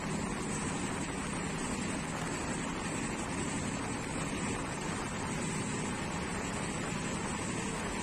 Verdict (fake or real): real